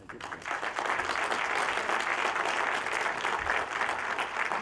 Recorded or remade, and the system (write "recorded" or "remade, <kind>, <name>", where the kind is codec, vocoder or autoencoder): recorded